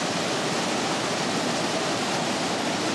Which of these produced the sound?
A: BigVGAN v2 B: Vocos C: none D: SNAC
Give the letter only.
A